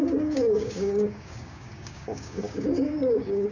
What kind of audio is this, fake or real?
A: fake